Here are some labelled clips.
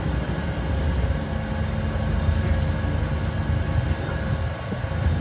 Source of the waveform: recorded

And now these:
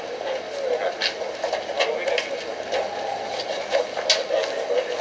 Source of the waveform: recorded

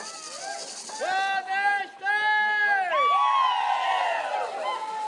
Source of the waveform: recorded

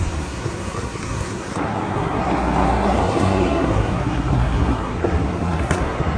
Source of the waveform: remade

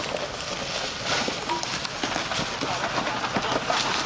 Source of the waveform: recorded